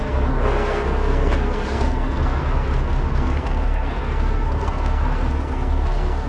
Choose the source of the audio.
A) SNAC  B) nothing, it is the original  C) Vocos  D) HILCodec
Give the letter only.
A